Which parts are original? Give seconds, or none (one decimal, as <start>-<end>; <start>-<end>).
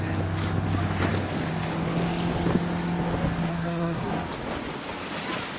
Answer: 0.0-3.5; 4.1-5.6